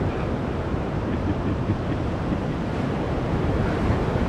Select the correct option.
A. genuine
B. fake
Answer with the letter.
B